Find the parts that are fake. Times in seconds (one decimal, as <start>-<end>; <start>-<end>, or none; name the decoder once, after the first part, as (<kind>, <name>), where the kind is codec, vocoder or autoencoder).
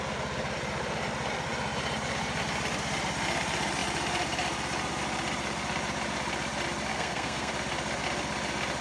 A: 6.9-7.5 (codec, SNAC)